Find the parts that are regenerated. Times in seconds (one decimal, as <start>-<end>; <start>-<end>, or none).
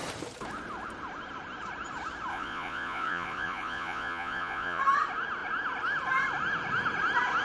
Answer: 2.3-4.8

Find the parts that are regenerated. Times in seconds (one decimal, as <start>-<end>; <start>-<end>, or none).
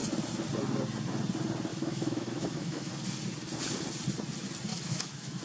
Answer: 1.7-2.9; 4.7-5.4